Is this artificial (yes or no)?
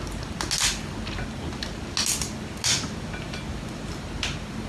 no